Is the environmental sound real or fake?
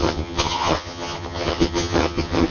fake